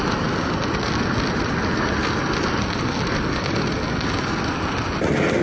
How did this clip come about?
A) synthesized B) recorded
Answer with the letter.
B